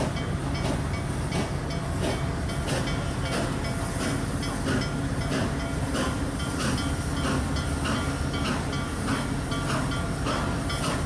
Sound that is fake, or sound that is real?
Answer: real